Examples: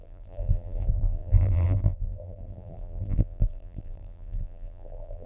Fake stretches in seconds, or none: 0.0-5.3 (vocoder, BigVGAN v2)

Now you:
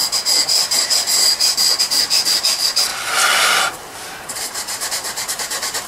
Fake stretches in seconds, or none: 1.8-2.9 (vocoder, BigVGAN v2); 3.6-5.9